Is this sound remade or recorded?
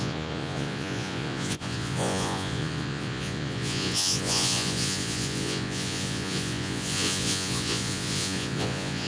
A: remade